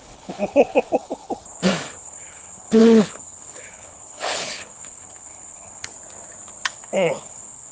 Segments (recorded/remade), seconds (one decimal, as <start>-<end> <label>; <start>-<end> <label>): 0.0-1.4 remade; 1.4-2.0 recorded; 2.0-5.9 remade; 5.9-6.7 recorded; 6.7-7.7 remade